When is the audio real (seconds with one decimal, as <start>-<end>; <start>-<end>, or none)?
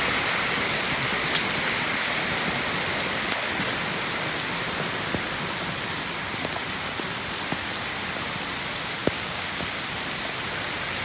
0.0-9.0; 9.6-11.0